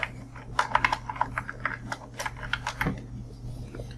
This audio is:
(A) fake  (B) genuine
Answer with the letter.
B